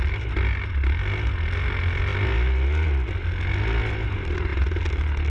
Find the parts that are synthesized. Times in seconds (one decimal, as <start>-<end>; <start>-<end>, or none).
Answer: none